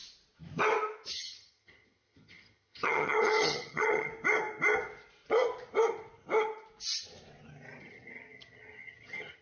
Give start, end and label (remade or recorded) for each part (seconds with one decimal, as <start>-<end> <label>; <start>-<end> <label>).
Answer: 0.0-1.1 recorded; 1.1-4.1 remade; 4.1-7.8 recorded; 7.8-9.4 remade